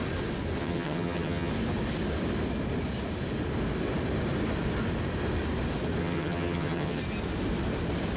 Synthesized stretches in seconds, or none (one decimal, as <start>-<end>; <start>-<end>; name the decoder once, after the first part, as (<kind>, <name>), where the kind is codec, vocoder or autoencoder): 0.6-1.5 (vocoder, HiFi-GAN); 6.0-7.0